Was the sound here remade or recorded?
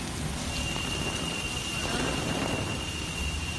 recorded